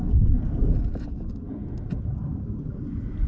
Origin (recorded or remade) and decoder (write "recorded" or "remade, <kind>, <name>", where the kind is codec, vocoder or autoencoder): recorded